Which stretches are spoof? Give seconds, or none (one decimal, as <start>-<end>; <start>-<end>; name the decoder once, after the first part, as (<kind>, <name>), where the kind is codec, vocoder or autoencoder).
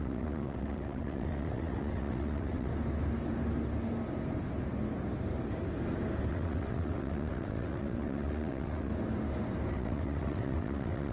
0.0-2.7 (vocoder, WaveNeXt); 6.3-8.9; 9.7-11.1